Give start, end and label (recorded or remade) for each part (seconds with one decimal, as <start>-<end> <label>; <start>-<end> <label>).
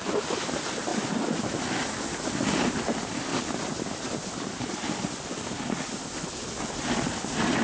0.0-7.6 recorded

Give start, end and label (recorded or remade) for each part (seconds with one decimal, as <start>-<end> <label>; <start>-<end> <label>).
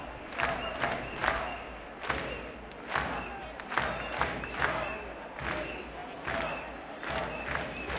0.0-8.0 recorded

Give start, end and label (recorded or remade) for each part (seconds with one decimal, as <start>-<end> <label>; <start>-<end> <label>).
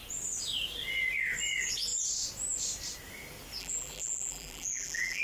0.0-3.6 recorded; 3.6-5.2 remade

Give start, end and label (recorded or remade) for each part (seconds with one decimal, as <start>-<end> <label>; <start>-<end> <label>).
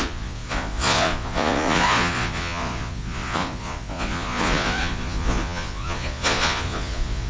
0.0-7.3 remade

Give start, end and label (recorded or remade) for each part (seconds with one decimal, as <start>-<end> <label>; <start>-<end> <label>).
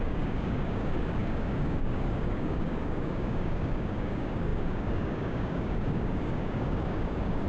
0.0-7.5 remade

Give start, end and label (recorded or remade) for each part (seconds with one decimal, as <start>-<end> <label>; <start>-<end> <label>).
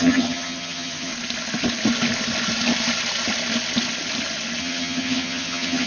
0.0-1.1 remade; 1.1-4.6 recorded; 4.6-5.9 remade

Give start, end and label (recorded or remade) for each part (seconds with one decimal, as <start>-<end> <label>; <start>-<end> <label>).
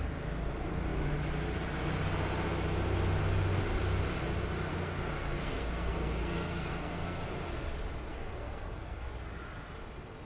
0.0-4.7 recorded; 4.7-7.3 remade; 7.3-8.1 recorded; 8.1-9.1 remade; 9.1-10.2 recorded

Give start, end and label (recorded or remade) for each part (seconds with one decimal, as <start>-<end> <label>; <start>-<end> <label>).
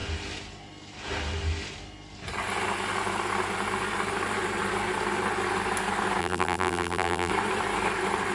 0.0-6.2 recorded; 6.2-7.3 remade; 7.3-8.3 recorded